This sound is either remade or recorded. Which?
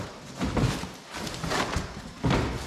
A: recorded